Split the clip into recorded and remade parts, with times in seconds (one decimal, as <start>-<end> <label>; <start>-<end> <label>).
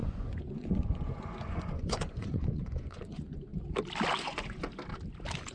0.0-3.5 remade; 3.5-4.2 recorded; 4.2-4.7 remade; 4.7-5.5 recorded